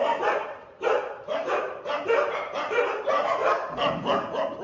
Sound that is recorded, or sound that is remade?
remade